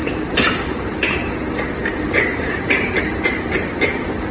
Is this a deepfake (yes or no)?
yes